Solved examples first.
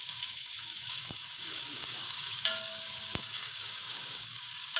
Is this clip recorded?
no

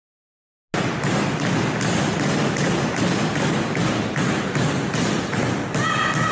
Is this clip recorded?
yes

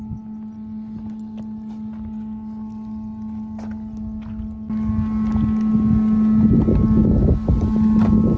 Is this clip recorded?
yes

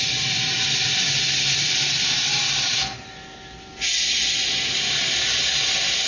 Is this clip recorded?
yes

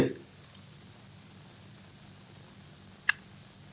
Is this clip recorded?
yes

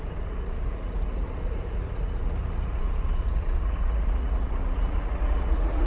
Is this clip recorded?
no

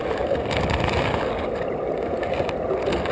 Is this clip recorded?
yes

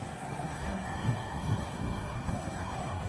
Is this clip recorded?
no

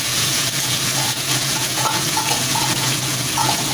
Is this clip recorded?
no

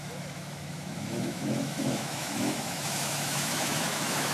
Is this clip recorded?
no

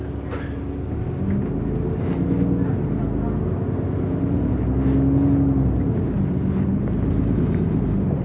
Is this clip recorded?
yes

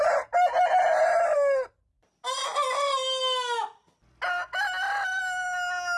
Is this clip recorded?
yes